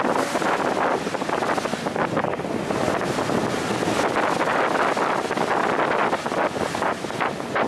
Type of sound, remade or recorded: recorded